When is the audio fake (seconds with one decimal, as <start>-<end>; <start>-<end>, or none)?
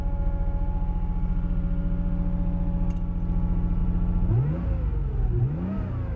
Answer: none